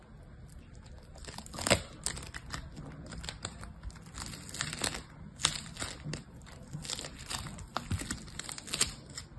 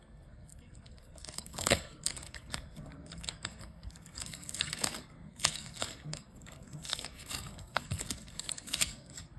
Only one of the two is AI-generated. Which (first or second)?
second